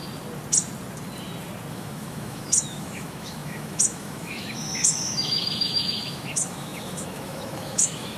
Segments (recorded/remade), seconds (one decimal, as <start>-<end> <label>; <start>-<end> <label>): 0.0-1.7 recorded; 1.7-8.2 remade